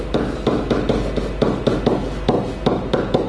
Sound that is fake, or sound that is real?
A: real